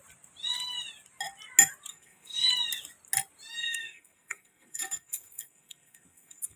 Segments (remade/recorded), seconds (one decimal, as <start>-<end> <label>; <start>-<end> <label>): 0.0-1.9 recorded; 1.9-2.5 remade; 2.5-3.6 recorded; 3.6-6.6 remade